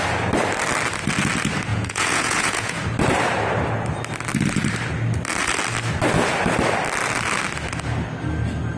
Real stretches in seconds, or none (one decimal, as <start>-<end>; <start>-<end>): 0.0-1.7; 2.8-8.8